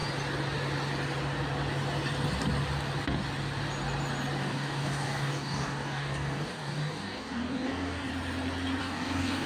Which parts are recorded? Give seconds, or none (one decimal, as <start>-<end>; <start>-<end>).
0.0-4.4; 8.1-8.8